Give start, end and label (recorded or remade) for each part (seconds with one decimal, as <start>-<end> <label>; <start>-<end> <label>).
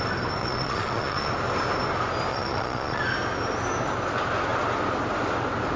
0.0-0.4 recorded; 0.4-1.3 remade; 1.3-2.3 recorded; 2.3-3.0 remade; 3.0-5.8 recorded